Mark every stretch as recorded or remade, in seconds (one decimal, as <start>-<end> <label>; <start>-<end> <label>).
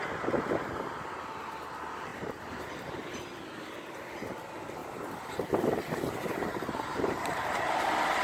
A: 0.0-2.1 recorded; 2.1-2.7 remade; 2.7-4.8 recorded; 4.8-7.7 remade; 7.7-8.2 recorded